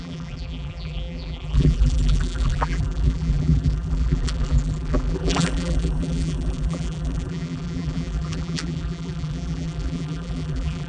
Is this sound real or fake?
fake